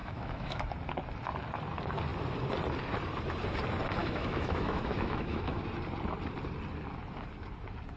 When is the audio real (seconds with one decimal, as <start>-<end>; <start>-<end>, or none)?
0.6-4.0; 5.6-8.0